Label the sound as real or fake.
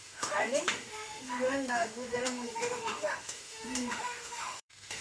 fake